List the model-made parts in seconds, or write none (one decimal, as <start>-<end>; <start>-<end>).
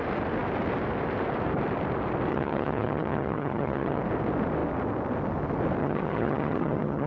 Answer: 2.3-4.0; 5.8-7.1